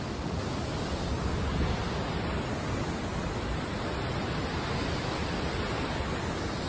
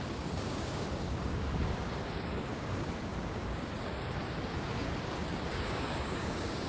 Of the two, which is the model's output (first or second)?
second